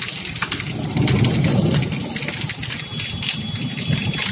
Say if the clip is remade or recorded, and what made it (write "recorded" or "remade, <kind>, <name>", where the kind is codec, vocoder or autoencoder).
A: recorded